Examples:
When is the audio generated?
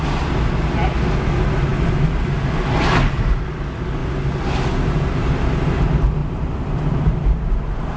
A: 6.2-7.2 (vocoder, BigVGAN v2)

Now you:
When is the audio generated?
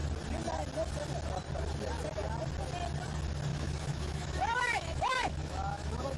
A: 3.5-6.2 (autoencoder, DAC-VAE)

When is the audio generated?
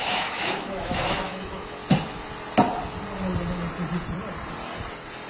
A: 0.0-1.8 (autoencoder, DAC-VAE)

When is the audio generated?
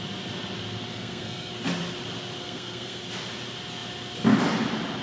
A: 0.9-1.5 (codec, SNAC); 2.4-3.0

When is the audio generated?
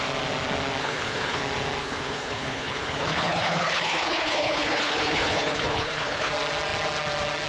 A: 0.8-1.4 (codec, HILCodec); 1.8-6.3